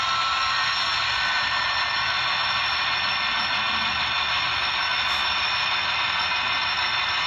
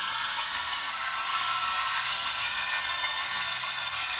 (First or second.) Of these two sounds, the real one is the first